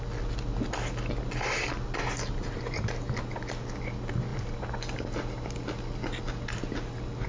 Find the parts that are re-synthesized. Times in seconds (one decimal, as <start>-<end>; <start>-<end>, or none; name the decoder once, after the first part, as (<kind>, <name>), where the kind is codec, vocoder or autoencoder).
none